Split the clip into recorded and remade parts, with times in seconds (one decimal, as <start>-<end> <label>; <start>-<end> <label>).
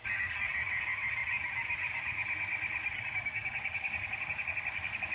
0.0-3.2 recorded; 3.2-3.9 remade; 3.9-5.1 recorded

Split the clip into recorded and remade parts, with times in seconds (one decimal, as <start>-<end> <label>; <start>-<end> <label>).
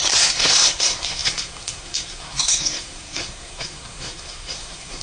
0.0-5.0 remade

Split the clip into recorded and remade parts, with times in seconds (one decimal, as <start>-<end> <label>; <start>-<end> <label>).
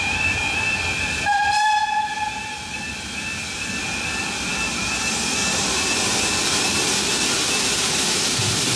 0.0-8.8 remade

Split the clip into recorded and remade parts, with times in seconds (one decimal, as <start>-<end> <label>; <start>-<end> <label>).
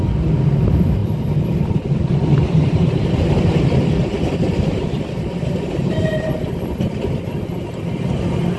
0.0-2.4 recorded; 2.4-6.1 remade; 6.1-8.6 recorded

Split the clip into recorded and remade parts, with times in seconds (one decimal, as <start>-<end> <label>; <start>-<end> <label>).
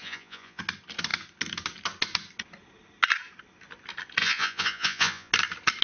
0.0-0.6 remade; 0.6-4.2 recorded; 4.2-5.3 remade; 5.3-5.8 recorded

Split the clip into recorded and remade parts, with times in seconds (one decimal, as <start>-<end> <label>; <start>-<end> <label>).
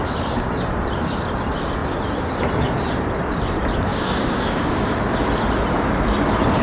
0.0-3.9 recorded; 3.9-4.9 remade; 4.9-6.6 recorded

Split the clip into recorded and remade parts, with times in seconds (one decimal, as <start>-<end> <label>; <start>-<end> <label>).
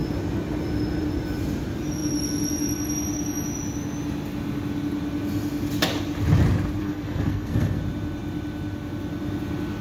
0.0-6.8 recorded; 6.8-7.8 remade; 7.8-9.8 recorded